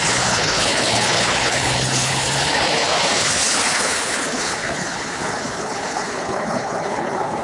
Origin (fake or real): fake